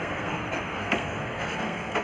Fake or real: fake